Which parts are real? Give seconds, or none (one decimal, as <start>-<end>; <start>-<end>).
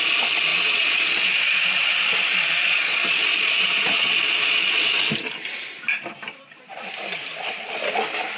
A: 0.0-0.5; 1.6-2.7; 5.0-8.4